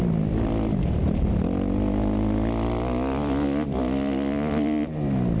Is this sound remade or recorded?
recorded